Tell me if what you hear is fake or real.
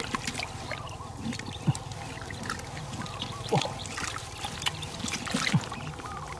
real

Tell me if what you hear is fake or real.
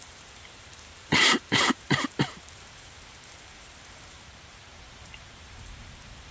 fake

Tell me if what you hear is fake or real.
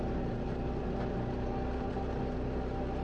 real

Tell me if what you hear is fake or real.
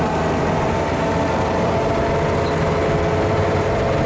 real